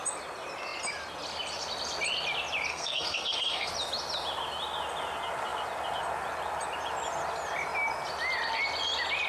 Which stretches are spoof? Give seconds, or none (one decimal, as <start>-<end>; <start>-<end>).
2.7-3.7